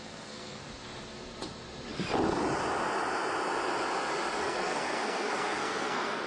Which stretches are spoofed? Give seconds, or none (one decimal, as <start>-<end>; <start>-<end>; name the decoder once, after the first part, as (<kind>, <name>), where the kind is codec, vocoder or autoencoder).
0.0-0.6 (codec, SNAC); 4.4-6.3